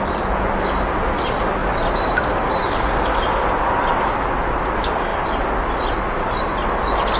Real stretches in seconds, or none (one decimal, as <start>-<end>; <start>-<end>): 0.0-1.6; 2.6-7.2